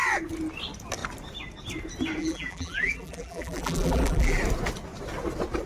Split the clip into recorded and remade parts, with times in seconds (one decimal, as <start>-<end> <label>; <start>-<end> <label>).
0.0-2.2 recorded; 2.2-4.4 remade; 4.4-5.7 recorded